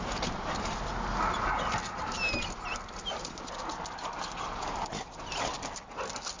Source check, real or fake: real